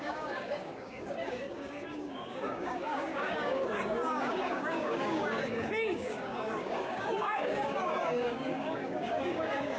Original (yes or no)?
no